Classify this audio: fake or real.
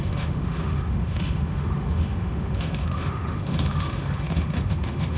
fake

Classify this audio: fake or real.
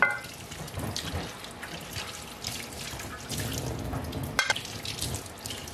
real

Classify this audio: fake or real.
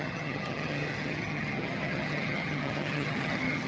fake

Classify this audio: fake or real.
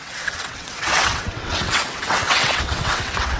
fake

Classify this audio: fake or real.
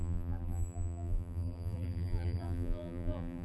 fake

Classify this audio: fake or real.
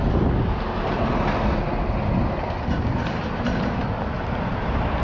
real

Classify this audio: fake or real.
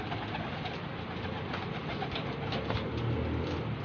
real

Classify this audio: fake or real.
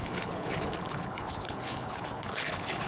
fake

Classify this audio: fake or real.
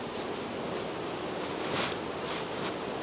real